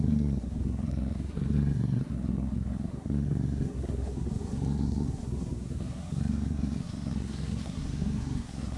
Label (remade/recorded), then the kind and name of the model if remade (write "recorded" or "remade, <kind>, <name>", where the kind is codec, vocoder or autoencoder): remade, codec, SNAC